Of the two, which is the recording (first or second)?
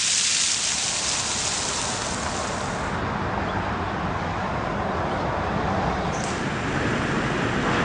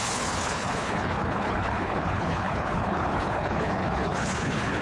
first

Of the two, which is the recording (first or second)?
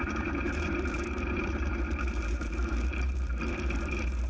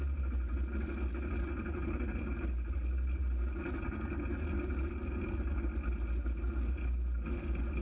second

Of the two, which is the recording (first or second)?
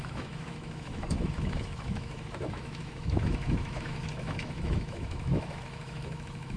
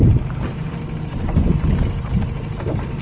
second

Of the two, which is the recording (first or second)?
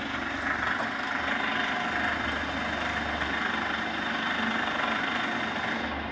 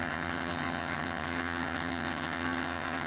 first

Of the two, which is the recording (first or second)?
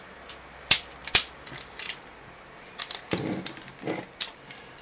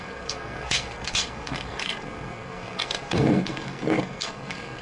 first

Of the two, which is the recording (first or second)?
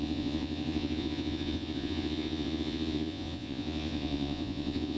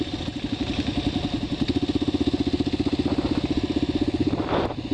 second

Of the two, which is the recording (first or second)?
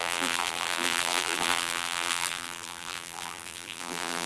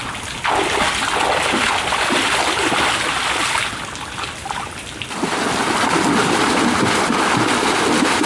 second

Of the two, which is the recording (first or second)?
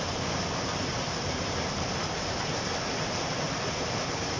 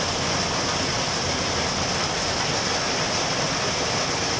second